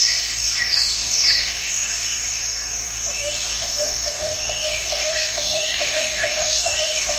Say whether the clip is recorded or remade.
remade